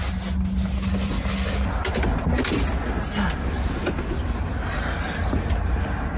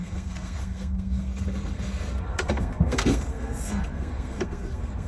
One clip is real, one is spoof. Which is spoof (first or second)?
second